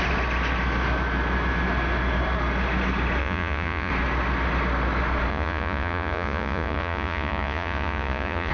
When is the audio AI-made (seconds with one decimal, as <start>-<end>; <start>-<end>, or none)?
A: 3.2-3.9; 5.3-8.5